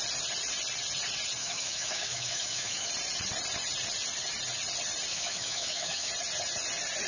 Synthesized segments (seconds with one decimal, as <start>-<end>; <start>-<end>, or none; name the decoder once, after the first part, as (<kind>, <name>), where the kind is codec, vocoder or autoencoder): 1.4-2.9 (autoencoder, DAC-VAE); 5.1-6.1